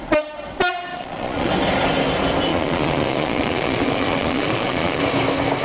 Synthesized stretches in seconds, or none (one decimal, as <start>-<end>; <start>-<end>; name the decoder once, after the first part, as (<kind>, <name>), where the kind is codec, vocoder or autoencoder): 0.9-1.5 (vocoder, Vocos); 2.5-5.0